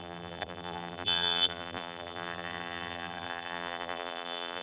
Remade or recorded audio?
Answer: remade